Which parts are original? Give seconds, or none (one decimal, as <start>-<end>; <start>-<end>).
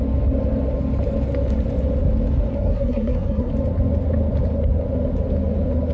0.0-2.5; 3.5-5.9